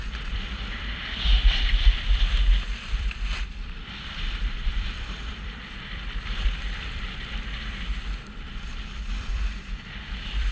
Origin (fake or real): fake